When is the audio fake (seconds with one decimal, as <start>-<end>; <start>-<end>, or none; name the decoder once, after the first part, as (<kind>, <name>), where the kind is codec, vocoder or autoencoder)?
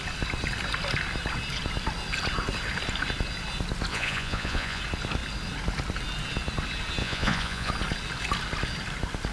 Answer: 3.9-4.8 (vocoder, Vocos); 7.0-7.7